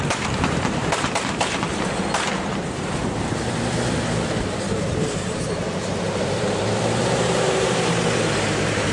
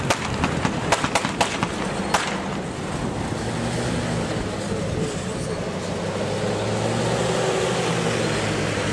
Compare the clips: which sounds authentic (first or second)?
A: second